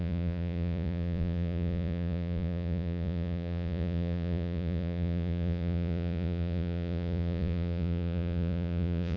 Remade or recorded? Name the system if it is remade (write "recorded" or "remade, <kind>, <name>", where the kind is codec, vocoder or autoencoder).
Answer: remade, vocoder, Vocos